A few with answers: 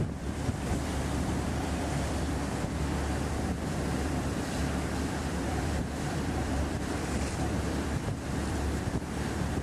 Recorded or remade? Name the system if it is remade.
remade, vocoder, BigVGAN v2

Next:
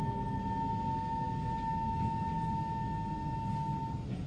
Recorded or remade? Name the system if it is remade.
recorded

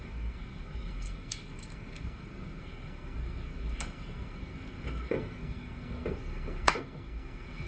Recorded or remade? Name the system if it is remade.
remade, codec, SNAC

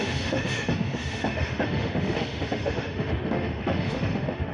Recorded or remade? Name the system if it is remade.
remade, autoencoder, DAC-VAE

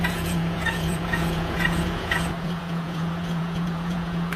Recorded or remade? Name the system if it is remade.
remade, vocoder, Vocos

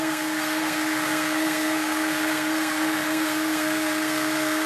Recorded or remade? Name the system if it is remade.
remade, codec, SNAC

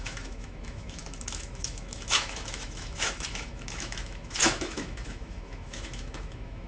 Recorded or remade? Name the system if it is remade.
remade, autoencoder, DAC-VAE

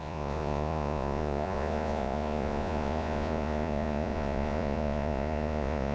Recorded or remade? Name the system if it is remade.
remade, vocoder, Vocos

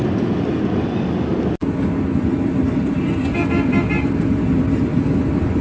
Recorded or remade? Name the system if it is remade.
recorded